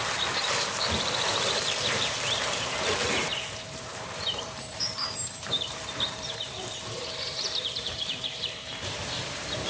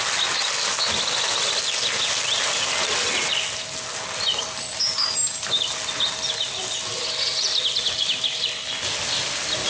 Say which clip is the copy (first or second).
first